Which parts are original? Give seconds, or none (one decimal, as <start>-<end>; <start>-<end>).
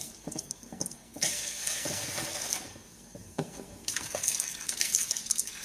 none